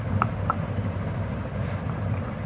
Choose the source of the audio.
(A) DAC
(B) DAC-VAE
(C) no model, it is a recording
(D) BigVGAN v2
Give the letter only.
C